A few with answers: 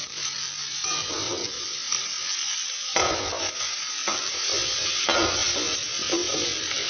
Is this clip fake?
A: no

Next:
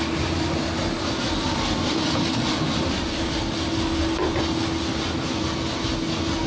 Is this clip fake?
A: no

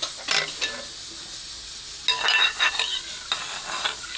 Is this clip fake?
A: no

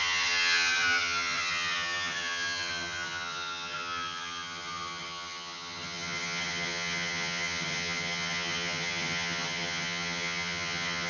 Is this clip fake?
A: yes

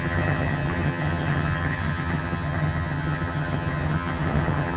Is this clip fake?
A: yes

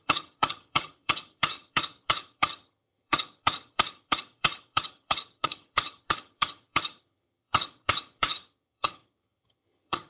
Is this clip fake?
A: yes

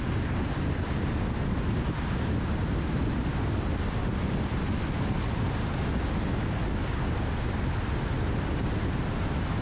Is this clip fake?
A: no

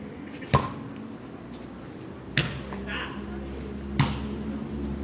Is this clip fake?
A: no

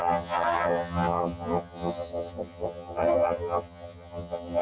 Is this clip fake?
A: yes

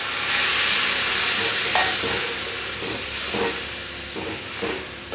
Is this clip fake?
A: no